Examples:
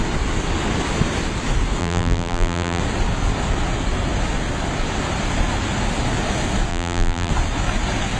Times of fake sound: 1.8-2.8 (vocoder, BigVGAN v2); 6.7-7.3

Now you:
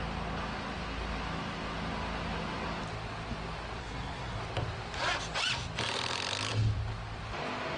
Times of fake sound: 3.8-4.4 (codec, SNAC)

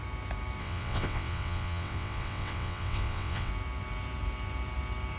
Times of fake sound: 0.6-3.5 (vocoder, WaveNeXt)

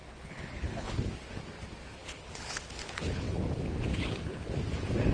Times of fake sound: 0.0-1.1 (codec, HILCodec); 2.0-3.4; 3.9-4.5